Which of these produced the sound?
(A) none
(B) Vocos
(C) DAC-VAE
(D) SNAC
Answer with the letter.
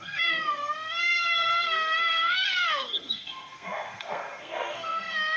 D